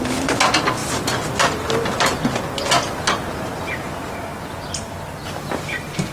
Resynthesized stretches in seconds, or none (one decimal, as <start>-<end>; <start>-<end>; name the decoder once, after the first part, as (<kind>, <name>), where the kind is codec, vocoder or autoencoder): none